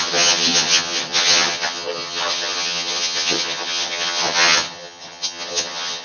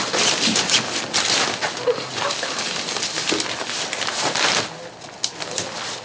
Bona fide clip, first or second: second